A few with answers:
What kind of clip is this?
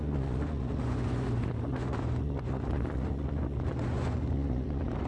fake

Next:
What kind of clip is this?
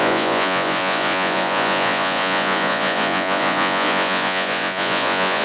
fake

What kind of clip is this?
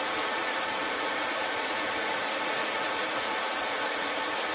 fake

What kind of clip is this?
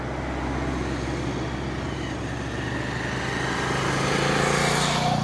real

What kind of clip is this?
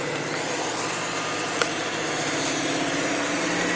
real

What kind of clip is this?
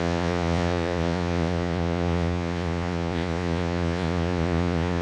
fake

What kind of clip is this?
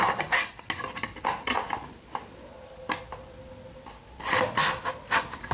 real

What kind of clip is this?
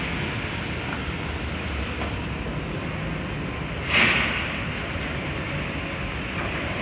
real